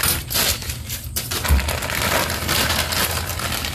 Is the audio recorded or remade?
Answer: recorded